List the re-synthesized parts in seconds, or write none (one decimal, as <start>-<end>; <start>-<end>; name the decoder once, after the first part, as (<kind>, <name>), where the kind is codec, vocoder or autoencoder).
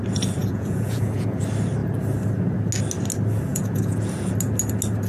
0.4-1.4 (vocoder, Vocos); 3.5-4.3